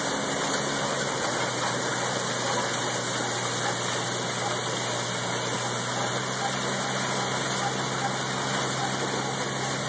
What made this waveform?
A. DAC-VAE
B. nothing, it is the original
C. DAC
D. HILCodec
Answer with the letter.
B